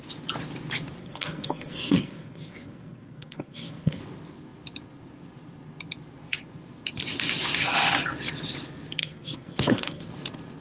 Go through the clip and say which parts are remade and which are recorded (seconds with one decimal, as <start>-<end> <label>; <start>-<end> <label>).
0.0-1.0 recorded; 1.0-4.0 remade; 4.0-9.0 recorded; 9.0-10.1 remade; 10.1-10.6 recorded